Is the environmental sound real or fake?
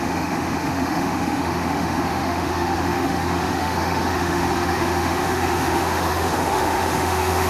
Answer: fake